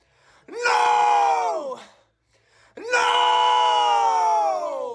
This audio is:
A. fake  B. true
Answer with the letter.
B